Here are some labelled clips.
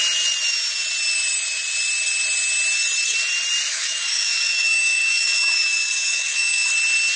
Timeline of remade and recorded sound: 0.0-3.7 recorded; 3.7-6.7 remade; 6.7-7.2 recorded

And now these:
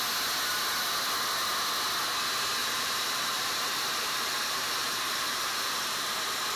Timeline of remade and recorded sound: 0.0-2.6 recorded; 2.6-5.7 remade; 5.7-6.6 recorded

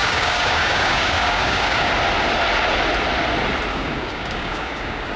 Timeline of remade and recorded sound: 0.0-1.9 remade; 1.9-3.7 recorded; 3.7-5.2 remade

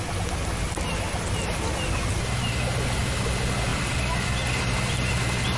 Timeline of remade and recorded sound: 0.0-5.6 recorded

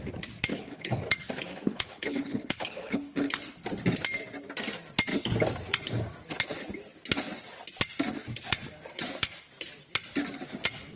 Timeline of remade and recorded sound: 0.0-0.5 recorded; 0.5-1.0 remade; 1.0-1.7 recorded; 1.7-3.4 remade; 3.4-10.9 recorded

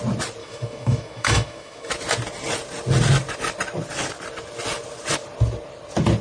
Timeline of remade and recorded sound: 0.0-0.4 recorded; 0.4-1.9 remade; 1.9-6.2 recorded